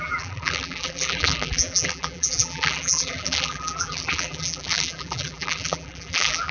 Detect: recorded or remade remade